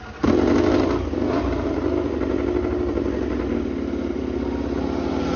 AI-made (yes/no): no